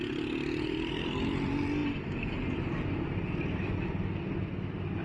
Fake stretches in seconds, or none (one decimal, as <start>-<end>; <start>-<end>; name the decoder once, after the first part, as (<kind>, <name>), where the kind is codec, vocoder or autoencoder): none